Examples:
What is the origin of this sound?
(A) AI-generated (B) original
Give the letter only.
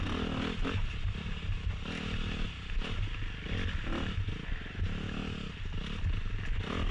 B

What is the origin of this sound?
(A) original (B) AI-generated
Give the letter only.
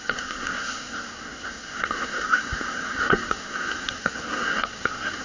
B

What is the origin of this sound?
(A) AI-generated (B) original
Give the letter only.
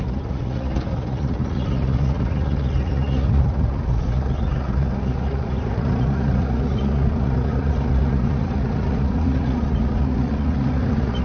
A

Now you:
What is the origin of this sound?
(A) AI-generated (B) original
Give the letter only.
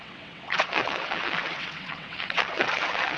A